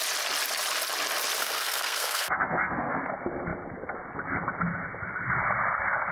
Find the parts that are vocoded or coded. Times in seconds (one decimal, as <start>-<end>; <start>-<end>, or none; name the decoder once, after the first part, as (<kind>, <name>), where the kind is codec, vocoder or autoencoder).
1.4-3.0 (codec, SNAC)

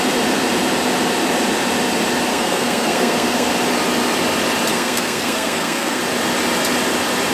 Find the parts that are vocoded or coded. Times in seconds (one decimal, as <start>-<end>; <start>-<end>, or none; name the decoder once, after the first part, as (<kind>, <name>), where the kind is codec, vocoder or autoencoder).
2.3-3.5 (codec, SNAC); 4.7-6.0

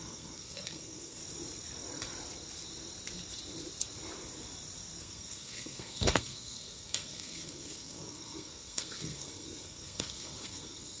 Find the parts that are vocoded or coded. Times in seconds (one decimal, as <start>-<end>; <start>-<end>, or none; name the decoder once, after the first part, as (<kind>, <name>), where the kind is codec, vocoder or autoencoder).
0.0-1.2 (codec, SNAC); 5.0-11.0

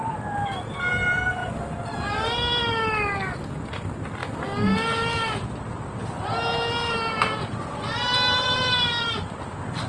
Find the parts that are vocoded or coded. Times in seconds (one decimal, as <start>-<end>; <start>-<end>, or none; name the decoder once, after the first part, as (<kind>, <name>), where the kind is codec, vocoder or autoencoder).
none

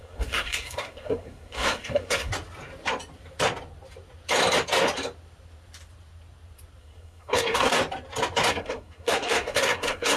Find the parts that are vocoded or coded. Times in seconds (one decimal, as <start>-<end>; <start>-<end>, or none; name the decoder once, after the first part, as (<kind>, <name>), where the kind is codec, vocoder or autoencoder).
0.0-2.3 (codec, SNAC); 6.8-7.7; 8.5-10.2

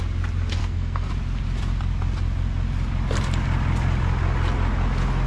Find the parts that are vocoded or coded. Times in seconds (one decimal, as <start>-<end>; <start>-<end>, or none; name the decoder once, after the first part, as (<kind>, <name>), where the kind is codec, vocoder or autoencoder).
0.6-1.1 (codec, SNAC)

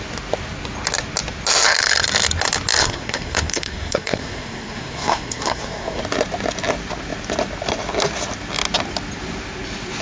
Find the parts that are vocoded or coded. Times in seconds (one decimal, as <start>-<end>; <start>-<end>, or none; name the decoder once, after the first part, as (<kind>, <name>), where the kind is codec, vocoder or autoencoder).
2.8-6.0 (codec, SNAC)